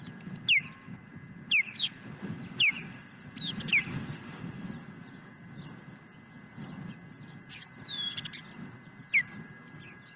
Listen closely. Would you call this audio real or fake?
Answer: real